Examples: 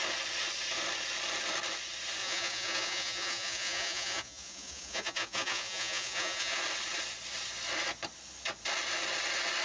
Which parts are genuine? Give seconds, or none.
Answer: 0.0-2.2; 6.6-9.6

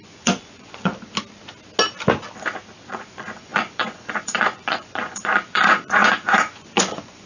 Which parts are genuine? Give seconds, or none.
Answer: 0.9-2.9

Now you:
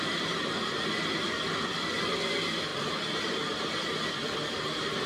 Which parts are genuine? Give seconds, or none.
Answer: 0.0-5.1